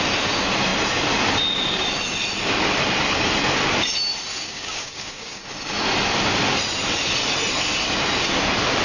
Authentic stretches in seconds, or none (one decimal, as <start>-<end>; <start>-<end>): 0.0-4.3; 5.4-8.8